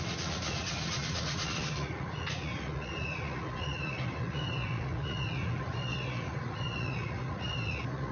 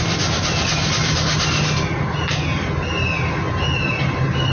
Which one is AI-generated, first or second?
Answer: first